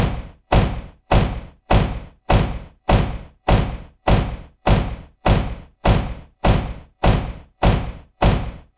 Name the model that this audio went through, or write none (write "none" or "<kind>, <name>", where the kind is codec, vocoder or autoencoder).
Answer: vocoder, BigVGAN v2